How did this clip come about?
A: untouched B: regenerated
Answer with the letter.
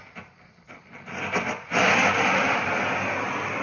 A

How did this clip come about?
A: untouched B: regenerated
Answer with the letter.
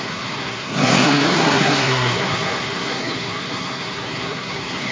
B